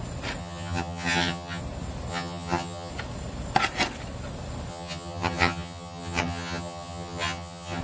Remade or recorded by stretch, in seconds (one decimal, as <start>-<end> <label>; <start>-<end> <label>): 0.0-0.4 recorded; 0.4-1.6 remade; 1.6-2.1 recorded; 2.1-2.9 remade; 2.9-4.7 recorded; 4.7-7.8 remade